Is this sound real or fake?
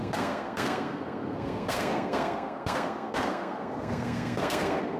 fake